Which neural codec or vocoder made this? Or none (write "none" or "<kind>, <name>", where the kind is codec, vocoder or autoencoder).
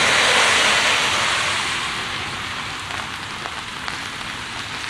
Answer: none